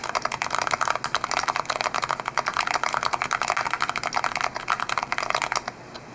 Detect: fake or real real